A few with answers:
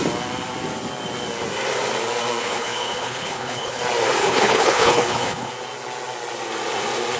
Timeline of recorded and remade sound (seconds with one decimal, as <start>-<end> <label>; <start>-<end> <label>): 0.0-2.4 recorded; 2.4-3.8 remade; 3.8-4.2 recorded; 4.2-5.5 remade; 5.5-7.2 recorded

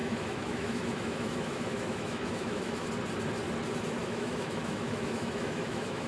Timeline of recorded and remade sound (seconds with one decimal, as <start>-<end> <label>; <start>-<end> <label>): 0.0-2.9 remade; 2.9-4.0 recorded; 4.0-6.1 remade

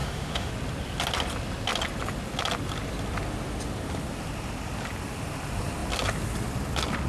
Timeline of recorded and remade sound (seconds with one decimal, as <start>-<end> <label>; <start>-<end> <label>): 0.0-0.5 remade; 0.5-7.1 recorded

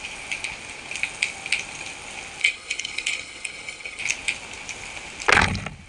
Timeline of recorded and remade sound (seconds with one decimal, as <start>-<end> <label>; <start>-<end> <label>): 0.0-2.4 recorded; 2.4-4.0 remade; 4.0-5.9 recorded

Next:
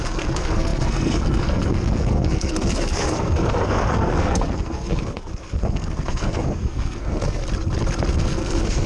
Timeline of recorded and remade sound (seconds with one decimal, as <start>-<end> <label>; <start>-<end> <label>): 0.0-7.4 remade; 7.4-8.1 recorded; 8.1-8.9 remade

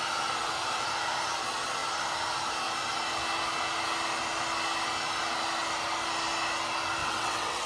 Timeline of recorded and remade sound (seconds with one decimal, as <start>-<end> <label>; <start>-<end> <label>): 0.0-7.0 recorded; 7.0-7.7 remade